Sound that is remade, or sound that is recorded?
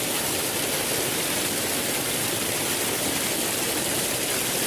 recorded